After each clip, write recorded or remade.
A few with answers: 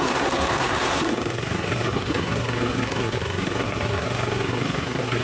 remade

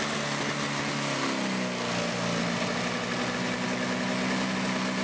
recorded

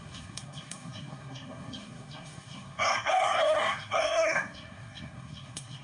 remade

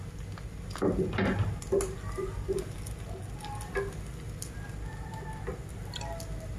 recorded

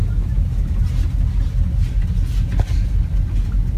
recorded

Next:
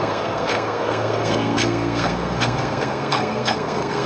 remade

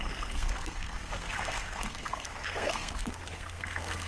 remade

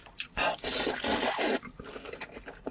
recorded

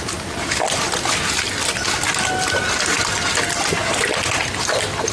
recorded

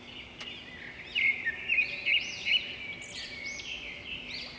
recorded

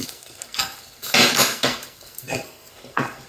remade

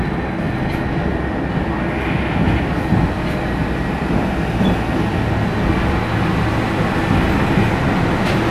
recorded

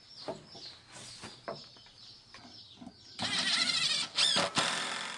recorded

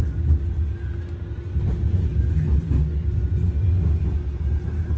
recorded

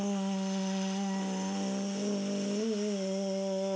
recorded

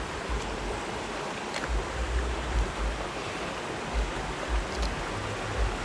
recorded